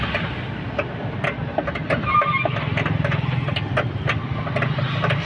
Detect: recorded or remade recorded